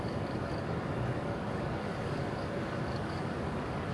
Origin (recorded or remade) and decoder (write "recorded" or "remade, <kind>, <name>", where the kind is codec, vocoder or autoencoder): remade, codec, DAC